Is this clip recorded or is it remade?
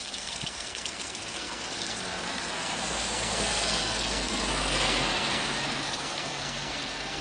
remade